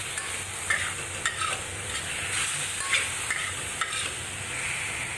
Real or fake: real